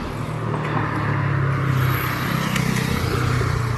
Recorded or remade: recorded